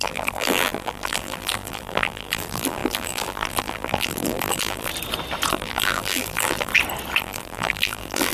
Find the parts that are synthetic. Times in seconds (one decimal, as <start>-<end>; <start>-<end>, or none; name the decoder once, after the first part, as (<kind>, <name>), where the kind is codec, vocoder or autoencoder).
0.0-4.9 (vocoder, BigVGAN v2); 5.5-6.7; 7.2-8.3